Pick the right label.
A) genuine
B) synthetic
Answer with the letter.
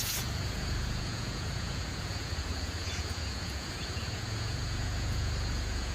B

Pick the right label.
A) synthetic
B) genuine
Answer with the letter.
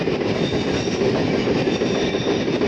B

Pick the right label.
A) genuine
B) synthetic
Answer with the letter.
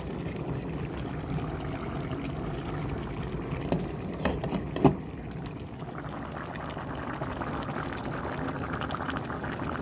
A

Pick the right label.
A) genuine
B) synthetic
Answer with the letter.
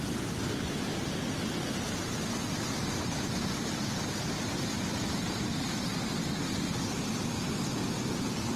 A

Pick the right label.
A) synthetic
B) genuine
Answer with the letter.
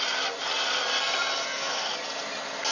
B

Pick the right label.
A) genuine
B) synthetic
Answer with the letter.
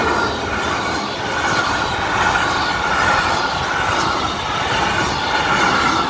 A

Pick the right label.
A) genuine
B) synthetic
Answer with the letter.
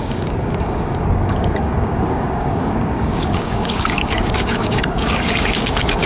B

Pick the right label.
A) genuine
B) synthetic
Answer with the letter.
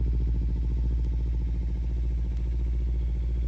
A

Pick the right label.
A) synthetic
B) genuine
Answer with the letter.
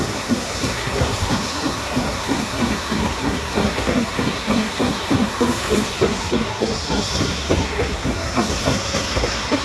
A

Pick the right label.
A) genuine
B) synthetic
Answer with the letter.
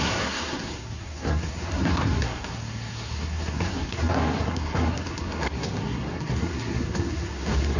B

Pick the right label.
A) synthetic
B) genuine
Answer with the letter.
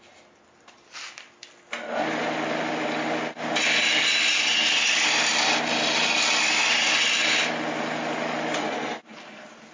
B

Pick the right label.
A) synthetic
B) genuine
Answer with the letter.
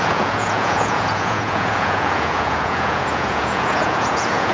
A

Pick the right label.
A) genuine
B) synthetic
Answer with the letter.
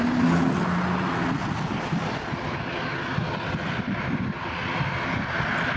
A